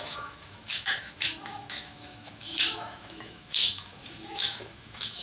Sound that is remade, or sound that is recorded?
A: remade